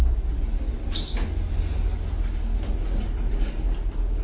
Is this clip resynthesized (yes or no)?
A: no